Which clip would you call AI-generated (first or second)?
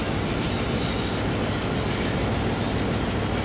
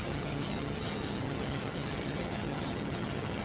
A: second